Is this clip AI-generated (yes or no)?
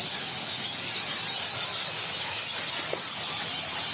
no